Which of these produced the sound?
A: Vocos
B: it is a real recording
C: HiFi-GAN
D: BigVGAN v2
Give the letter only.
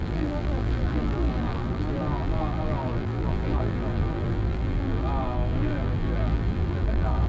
D